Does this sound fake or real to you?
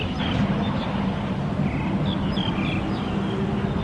real